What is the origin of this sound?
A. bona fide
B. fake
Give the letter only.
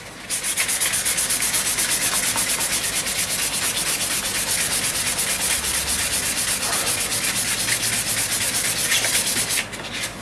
A